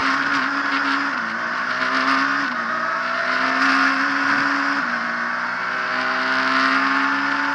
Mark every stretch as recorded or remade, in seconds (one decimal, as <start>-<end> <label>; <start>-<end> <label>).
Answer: 0.0-7.5 recorded